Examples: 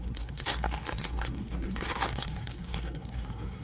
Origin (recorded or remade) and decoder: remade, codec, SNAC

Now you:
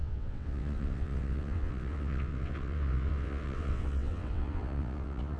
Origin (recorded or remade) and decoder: remade, vocoder, WaveNeXt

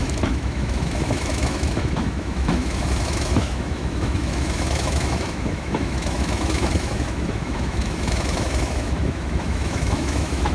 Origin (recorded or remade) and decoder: remade, autoencoder, DAC-VAE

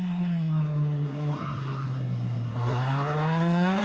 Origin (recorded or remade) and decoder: remade, codec, SNAC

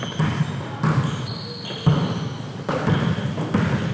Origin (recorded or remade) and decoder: recorded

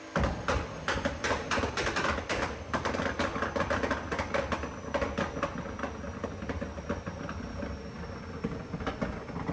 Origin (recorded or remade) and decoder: recorded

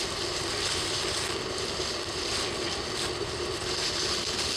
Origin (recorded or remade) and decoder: recorded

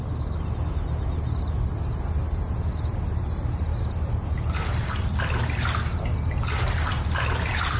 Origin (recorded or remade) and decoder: recorded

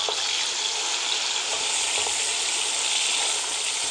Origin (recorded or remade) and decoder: recorded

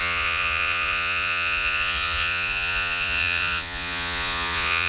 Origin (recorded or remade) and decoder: remade, vocoder, Vocos